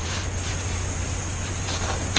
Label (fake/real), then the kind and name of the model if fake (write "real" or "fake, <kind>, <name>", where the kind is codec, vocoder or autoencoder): real